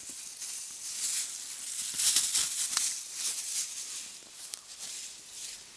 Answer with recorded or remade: recorded